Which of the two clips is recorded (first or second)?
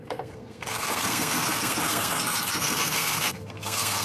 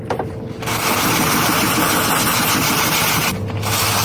second